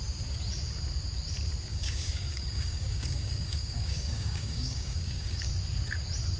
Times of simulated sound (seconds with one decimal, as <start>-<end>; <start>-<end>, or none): 1.7-5.5